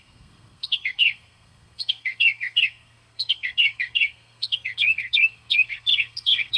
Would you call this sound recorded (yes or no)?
no